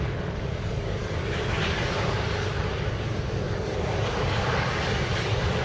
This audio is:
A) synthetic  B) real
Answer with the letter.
A